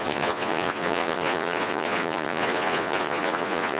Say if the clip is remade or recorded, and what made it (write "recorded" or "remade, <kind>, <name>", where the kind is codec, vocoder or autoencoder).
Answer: remade, vocoder, Vocos